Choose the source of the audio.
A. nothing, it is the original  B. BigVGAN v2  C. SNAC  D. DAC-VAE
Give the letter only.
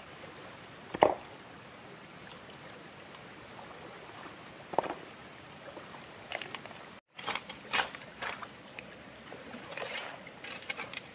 A